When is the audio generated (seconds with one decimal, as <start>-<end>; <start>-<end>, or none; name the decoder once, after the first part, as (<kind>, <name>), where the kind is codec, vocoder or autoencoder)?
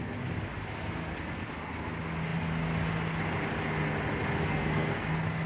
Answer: 4.4-5.1 (codec, SNAC)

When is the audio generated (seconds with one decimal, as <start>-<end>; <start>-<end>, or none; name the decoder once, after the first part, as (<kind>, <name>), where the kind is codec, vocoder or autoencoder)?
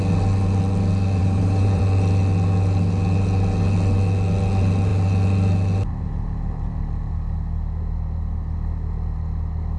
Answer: 1.2-1.8 (vocoder, BigVGAN v2)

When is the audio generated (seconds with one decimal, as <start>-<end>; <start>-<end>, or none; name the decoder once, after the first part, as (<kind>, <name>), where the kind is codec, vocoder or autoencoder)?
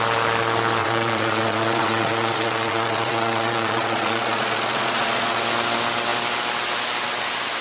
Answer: 0.8-5.4 (vocoder, Vocos)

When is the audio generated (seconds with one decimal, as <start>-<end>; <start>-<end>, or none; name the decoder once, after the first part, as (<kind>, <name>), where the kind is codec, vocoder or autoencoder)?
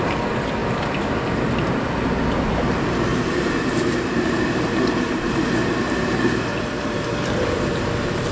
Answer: 3.1-8.3 (vocoder, BigVGAN v2)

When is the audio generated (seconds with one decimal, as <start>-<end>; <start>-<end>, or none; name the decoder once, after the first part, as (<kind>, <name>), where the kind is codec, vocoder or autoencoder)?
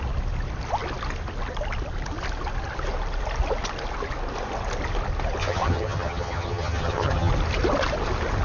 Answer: 5.4-7.3 (vocoder, HiFi-GAN)